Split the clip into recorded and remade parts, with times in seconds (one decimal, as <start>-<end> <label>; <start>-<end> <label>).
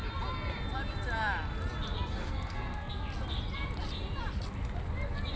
0.0-2.2 recorded; 2.2-2.9 remade; 2.9-5.4 recorded